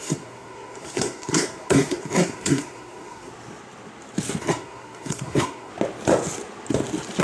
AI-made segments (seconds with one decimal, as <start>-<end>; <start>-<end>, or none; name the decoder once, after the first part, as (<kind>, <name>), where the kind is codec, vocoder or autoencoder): 0.0-3.3 (codec, SNAC); 4.4-5.7

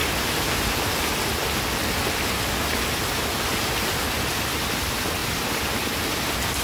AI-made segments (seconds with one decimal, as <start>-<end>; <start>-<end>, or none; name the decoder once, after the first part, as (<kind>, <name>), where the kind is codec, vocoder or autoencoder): 0.0-0.8 (vocoder, BigVGAN v2); 5.2-5.7

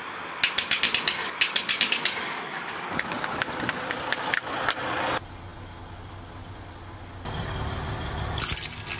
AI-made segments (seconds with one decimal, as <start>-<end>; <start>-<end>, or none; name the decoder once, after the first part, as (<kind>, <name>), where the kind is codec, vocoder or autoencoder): 1.2-3.5 (codec, DAC)

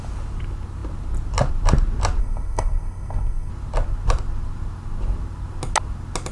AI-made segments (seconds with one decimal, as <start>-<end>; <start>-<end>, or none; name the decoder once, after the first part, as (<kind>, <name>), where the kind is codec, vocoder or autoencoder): 2.2-3.5 (codec, SNAC)